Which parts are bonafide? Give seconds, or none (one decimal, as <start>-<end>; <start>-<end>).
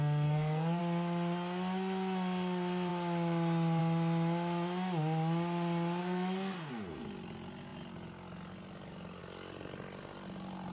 0.8-6.0; 6.7-10.7